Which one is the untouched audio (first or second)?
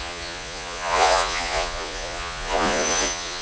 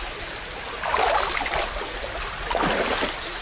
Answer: second